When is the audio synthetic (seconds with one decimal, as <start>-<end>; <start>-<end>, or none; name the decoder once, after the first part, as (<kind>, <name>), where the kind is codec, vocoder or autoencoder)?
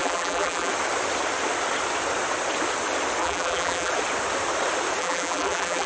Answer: 0.0-0.7 (vocoder, BigVGAN v2); 3.2-3.9; 5.0-5.9